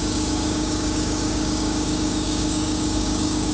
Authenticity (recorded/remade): remade